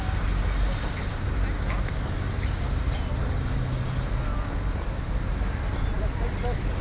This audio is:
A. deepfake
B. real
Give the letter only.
B